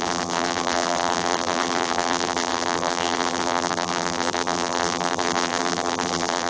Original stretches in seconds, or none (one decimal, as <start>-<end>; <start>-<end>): none